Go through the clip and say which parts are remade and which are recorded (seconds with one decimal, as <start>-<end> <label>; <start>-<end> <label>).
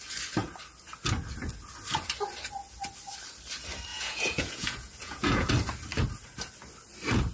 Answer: 0.0-3.9 recorded; 3.9-5.5 remade; 5.5-7.3 recorded